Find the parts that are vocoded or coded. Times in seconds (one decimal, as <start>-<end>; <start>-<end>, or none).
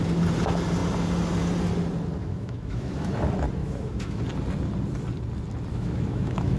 2.2-3.1; 3.6-4.2; 5.7-6.6